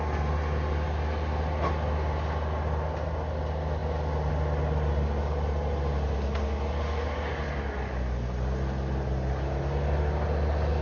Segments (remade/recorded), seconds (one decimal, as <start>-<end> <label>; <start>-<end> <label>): 0.0-10.8 recorded